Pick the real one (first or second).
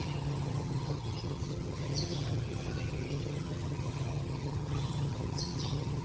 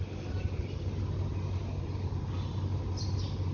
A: second